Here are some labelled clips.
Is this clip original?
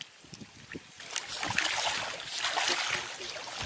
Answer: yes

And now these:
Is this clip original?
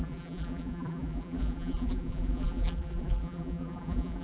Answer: no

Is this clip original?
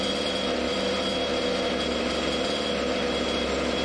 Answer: yes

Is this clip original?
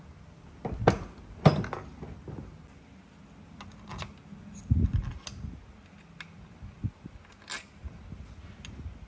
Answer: yes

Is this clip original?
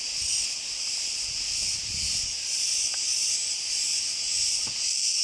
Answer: no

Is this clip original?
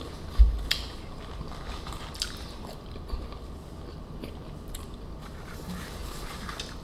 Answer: yes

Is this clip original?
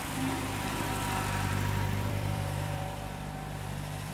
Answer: no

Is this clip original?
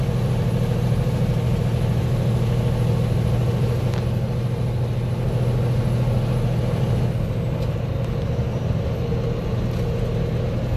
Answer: yes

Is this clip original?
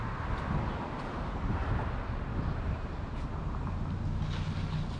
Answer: yes